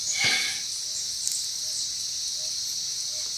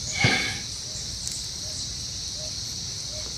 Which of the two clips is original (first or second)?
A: first